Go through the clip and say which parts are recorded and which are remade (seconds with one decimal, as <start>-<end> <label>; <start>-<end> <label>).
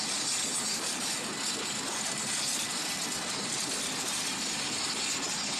0.0-5.6 recorded